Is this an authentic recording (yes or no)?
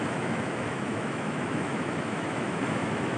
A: no